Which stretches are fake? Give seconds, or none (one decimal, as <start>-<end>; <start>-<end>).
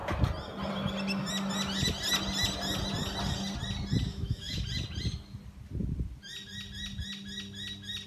4.1-4.6